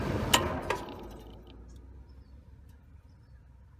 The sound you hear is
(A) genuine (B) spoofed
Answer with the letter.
A